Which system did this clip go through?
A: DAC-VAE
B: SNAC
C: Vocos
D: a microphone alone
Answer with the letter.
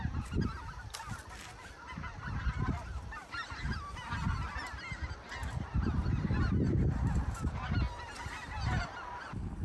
D